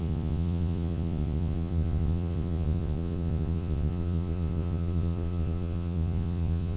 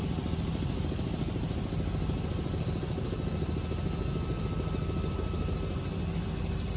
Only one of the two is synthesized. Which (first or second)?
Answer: first